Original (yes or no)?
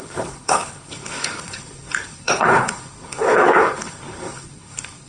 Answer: no